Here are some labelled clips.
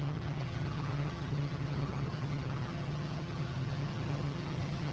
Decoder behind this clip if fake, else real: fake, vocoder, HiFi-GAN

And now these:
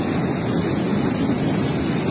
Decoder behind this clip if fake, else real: real